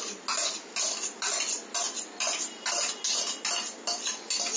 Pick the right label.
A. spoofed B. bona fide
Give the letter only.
B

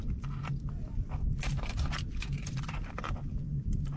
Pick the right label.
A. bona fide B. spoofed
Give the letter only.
B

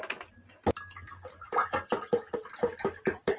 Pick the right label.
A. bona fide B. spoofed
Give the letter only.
A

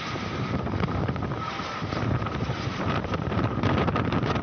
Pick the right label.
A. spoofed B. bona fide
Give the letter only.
A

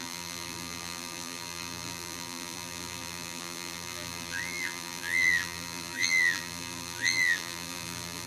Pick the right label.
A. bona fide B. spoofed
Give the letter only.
B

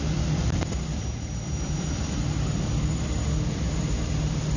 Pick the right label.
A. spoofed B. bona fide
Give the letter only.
A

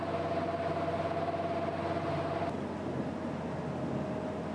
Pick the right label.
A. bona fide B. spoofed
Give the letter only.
A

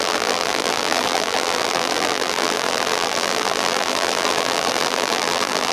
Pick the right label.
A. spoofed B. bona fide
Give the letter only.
A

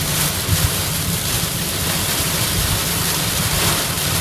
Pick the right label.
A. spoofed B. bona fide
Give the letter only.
A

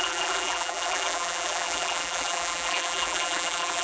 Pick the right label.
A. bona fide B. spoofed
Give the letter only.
B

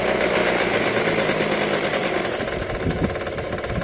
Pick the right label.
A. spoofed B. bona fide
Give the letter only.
B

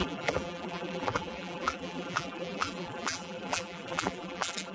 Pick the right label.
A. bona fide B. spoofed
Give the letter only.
B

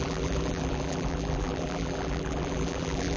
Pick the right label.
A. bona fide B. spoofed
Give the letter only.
B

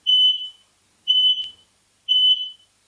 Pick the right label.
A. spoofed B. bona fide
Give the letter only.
A